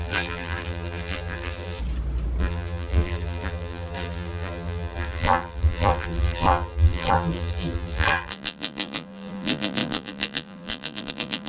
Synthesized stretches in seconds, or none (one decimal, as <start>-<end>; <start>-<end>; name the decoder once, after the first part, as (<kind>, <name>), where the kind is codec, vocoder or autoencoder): 0.0-1.8 (vocoder, BigVGAN v2); 2.4-11.5